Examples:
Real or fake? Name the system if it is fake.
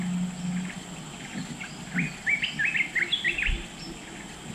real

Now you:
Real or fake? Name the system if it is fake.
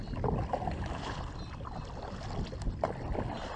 real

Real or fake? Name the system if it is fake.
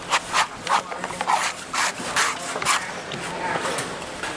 real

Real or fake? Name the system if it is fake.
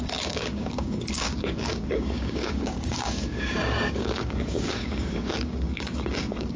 fake, codec, DAC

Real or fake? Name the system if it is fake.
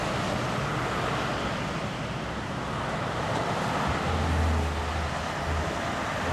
real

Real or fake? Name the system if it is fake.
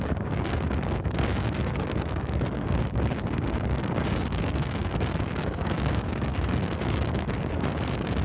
fake, codec, DAC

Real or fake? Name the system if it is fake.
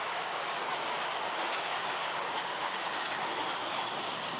fake, codec, DAC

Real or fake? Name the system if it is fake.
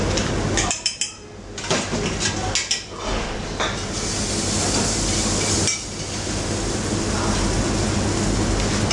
real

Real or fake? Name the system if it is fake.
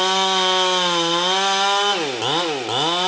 real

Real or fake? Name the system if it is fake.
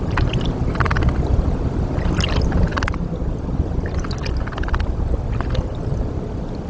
real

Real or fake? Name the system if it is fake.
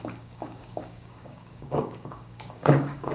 fake, codec, DAC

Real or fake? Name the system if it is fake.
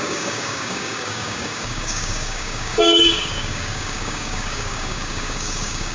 fake, codec, DAC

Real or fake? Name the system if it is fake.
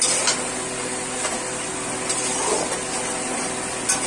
real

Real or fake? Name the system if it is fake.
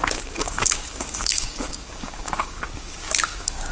fake, codec, DAC